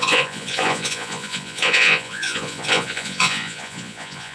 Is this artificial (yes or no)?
yes